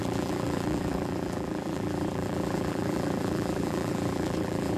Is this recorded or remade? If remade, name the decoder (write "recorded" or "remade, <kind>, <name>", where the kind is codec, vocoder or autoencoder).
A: remade, vocoder, BigVGAN v2